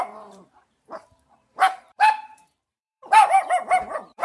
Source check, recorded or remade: remade